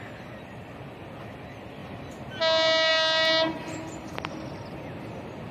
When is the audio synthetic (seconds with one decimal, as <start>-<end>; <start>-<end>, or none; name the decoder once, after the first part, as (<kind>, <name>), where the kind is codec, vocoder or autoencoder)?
none